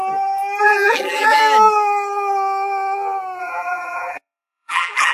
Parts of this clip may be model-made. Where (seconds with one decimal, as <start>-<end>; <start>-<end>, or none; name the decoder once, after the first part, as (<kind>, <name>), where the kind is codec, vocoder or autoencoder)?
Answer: 0.6-1.4 (vocoder, BigVGAN v2); 3.4-5.1